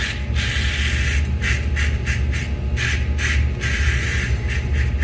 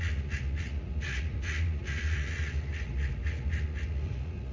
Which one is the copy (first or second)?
second